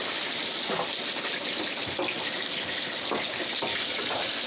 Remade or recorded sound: recorded